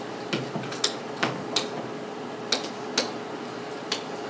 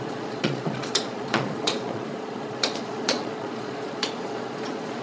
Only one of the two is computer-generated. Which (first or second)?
second